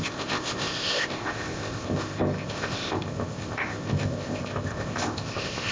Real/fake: fake